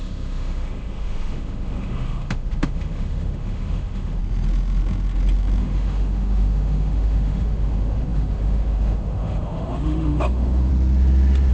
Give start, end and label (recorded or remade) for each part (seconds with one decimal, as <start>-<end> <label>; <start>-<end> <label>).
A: 0.0-4.2 remade; 4.2-5.6 recorded; 5.6-10.7 remade; 10.7-11.5 recorded